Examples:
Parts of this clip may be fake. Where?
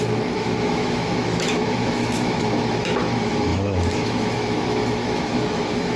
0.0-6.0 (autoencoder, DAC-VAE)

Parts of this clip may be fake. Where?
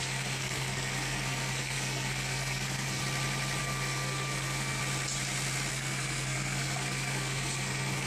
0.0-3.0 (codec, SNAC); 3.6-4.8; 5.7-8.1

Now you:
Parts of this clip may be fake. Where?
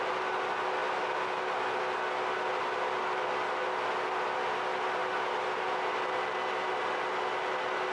none